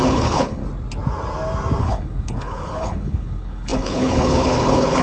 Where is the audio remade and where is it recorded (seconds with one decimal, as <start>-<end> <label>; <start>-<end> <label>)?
0.0-0.6 remade; 0.6-1.8 recorded; 1.8-5.0 remade